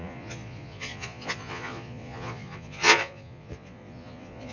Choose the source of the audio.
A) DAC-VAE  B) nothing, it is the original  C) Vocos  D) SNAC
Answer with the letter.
C